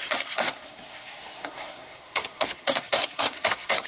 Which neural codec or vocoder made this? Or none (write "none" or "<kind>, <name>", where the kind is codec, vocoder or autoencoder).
codec, SNAC